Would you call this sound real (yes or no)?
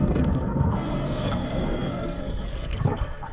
no